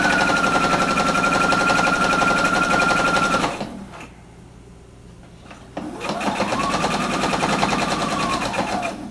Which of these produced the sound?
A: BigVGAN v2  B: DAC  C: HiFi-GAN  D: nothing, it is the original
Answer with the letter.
D